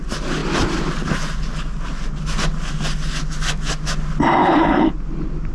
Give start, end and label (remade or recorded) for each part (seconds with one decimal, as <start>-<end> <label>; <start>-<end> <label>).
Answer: 0.0-4.4 recorded; 4.4-4.9 remade; 4.9-5.5 recorded